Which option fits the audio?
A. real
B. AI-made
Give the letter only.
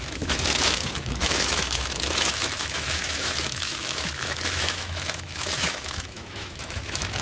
B